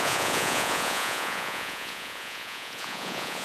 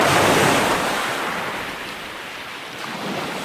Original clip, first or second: second